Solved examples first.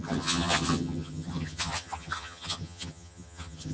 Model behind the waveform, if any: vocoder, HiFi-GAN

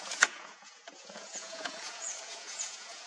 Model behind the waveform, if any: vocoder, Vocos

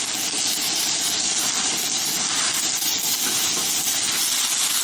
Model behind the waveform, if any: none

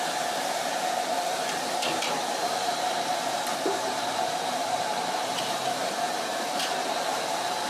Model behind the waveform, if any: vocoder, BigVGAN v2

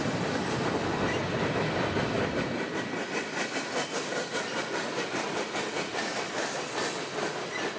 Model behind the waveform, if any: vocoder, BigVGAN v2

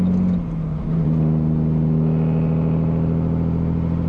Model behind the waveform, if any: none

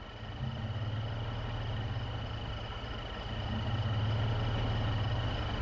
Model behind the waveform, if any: none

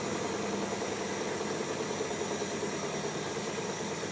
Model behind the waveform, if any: none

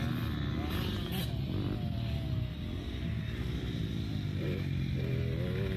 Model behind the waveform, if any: none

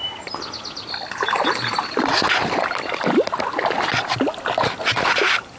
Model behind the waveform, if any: none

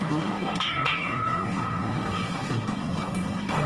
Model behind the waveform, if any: codec, SNAC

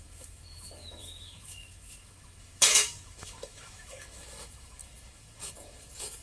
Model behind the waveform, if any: autoencoder, DAC-VAE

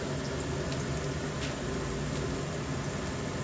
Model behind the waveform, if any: none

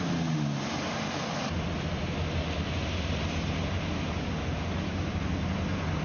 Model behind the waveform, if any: none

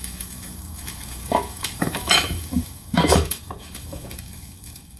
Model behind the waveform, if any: autoencoder, DAC-VAE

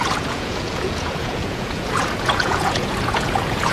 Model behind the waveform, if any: vocoder, Vocos